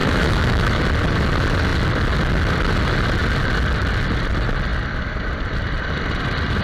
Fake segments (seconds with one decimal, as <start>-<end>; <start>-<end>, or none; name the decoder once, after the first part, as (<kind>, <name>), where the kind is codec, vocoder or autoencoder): 0.0-0.8 (autoencoder, DAC-VAE)